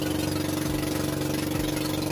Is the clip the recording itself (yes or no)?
yes